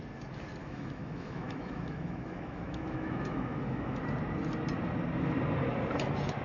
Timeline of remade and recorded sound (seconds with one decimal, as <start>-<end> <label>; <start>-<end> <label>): 0.0-0.6 recorded; 0.6-4.0 remade; 4.0-6.4 recorded